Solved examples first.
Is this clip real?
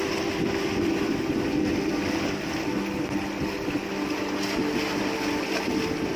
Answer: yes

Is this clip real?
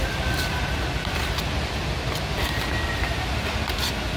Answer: yes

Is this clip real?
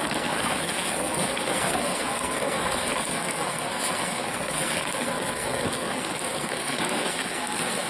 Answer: no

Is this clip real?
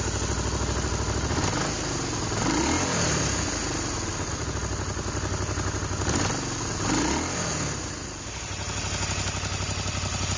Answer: yes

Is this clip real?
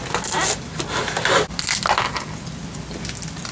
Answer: yes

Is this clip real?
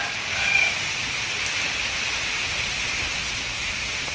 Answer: yes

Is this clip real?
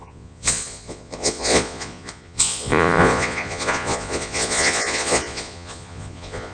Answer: no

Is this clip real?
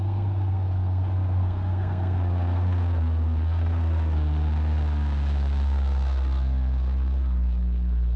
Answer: no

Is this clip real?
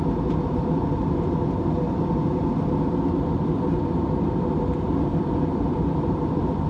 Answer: yes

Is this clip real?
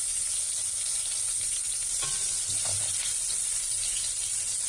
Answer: yes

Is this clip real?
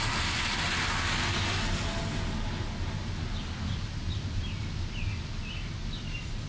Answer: yes